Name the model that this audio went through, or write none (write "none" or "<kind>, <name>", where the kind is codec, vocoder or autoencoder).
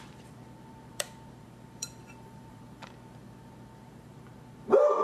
vocoder, BigVGAN v2